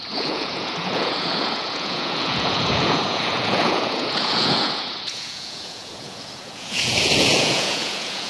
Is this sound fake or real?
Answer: fake